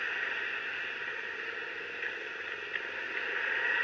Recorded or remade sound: recorded